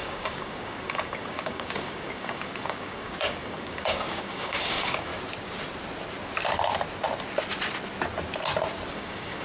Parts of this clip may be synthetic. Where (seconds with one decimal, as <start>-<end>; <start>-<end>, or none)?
0.0-5.1; 8.9-9.4